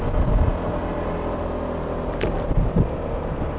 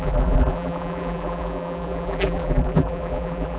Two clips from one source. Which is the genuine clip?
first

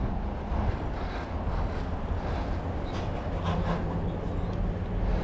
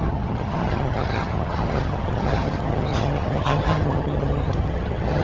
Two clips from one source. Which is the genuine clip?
first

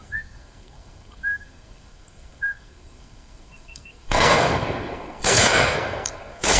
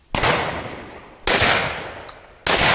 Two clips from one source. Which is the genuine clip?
second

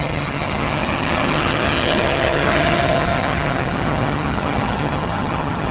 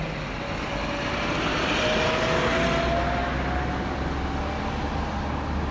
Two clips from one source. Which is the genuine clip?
second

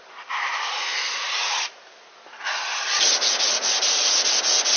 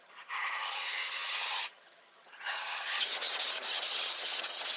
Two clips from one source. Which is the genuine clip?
first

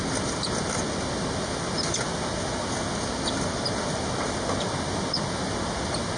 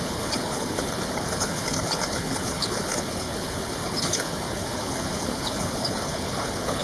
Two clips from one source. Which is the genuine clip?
first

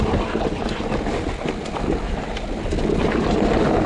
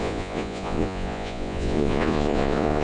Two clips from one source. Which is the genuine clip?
first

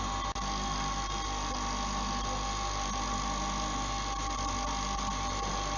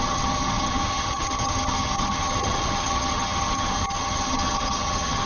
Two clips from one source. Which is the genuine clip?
first